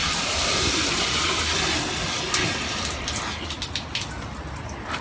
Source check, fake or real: real